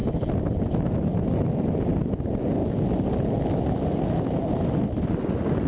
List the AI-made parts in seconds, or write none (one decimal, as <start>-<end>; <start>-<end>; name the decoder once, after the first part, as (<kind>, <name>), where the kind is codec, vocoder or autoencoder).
none

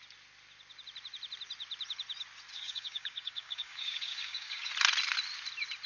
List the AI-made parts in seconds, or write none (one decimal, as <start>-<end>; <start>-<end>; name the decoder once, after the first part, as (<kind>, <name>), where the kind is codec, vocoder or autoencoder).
2.5-4.7 (codec, DAC)

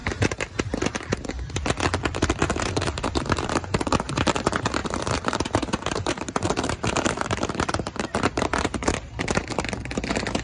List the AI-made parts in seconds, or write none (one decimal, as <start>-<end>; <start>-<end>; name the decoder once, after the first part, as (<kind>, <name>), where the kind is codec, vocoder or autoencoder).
2.6-10.4 (vocoder, BigVGAN v2)

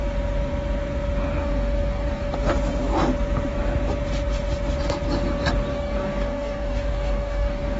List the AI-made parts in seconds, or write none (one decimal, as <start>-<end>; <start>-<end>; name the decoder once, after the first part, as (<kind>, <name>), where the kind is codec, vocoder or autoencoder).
1.4-2.3 (codec, DAC); 5.7-7.8